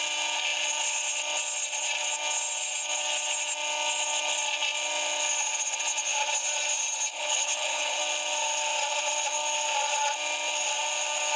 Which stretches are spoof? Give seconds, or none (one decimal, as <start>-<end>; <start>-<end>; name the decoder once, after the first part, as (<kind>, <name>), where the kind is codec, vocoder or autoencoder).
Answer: 7.1-8.0 (codec, HILCodec)